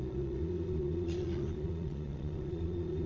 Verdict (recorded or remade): remade